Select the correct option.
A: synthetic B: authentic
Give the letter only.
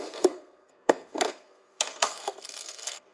A